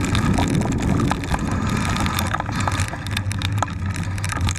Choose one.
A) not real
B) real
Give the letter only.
B